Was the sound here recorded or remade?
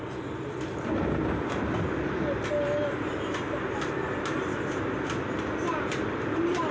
recorded